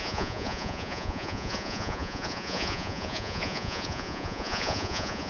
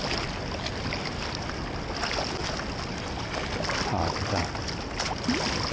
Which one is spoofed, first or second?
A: first